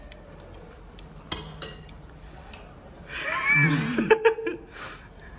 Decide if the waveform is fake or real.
real